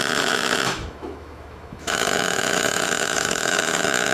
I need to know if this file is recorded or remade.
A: remade